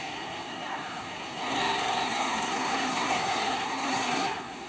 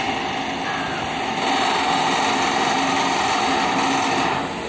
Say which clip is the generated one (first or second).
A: first